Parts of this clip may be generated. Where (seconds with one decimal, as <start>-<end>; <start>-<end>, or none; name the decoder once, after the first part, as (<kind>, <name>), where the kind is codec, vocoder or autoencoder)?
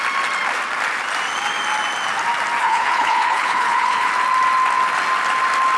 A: 2.6-4.1 (codec, HILCodec)